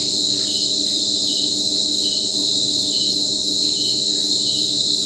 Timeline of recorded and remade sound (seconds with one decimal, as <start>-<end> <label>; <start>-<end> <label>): 0.0-1.5 remade; 1.5-2.4 recorded; 2.4-3.1 remade; 3.1-5.1 recorded